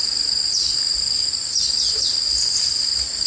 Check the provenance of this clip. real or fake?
real